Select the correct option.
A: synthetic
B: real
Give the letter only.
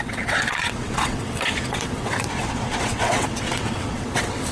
A